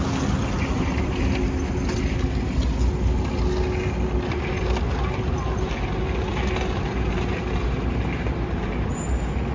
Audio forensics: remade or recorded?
recorded